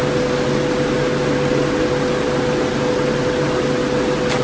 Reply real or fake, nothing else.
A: real